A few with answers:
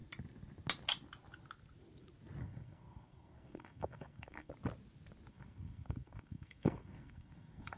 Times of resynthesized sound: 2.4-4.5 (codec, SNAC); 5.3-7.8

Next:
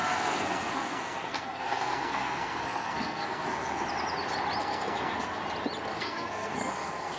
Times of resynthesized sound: 0.0-3.8 (codec, SNAC); 4.6-5.4; 5.9-7.2

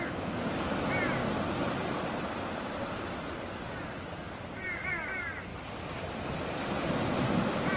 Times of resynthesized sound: none

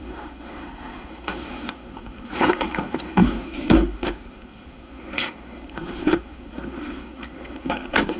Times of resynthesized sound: 0.0-8.2 (codec, SNAC)